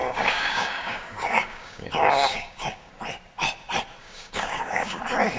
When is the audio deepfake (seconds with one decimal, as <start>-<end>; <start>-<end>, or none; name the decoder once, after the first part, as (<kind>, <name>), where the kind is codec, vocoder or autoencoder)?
0.0-2.9 (codec, DAC); 4.0-5.0